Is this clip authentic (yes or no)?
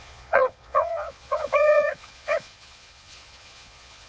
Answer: no